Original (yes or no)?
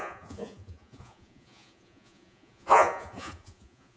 no